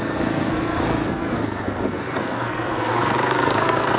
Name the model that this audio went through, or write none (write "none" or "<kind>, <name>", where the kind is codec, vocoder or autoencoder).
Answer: codec, SNAC